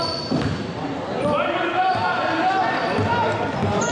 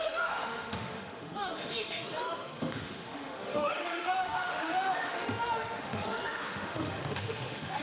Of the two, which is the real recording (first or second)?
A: first